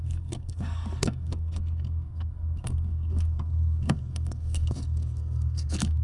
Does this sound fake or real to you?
fake